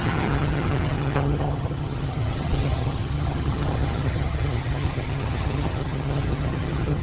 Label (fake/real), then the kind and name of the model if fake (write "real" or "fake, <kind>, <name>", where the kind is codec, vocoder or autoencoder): fake, vocoder, HiFi-GAN